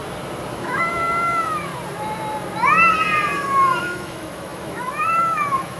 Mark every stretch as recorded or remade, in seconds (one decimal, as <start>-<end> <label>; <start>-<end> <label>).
0.0-0.5 recorded; 0.5-1.7 remade; 1.7-3.8 recorded; 3.8-5.8 remade